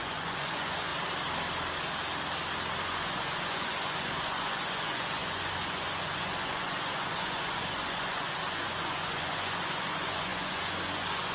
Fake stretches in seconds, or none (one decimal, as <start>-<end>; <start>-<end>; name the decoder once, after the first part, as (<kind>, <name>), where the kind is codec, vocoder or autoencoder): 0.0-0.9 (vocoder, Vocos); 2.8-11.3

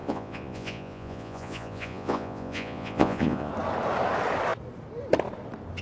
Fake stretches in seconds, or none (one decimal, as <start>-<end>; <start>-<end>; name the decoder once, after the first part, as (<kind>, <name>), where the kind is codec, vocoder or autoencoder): 0.0-3.5 (vocoder, Vocos)

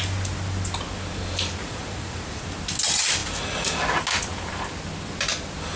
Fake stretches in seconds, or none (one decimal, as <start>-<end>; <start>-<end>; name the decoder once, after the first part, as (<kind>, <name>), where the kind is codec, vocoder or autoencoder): 1.6-2.4 (vocoder, Vocos)